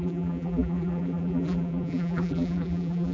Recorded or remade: remade